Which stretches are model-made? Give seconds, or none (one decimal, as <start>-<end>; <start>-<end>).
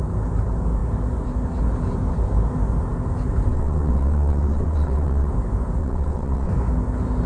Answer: 3.5-5.3; 5.8-6.5